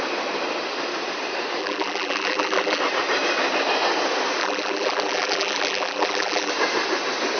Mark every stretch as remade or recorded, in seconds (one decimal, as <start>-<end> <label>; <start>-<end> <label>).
0.0-1.6 recorded; 1.6-2.8 remade; 2.8-4.4 recorded; 4.4-6.5 remade; 6.5-7.4 recorded